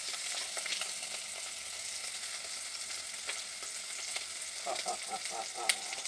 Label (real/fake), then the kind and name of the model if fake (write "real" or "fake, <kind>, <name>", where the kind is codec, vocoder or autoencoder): real